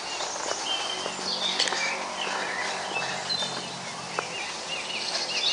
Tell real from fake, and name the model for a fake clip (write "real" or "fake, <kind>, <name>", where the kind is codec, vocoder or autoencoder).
real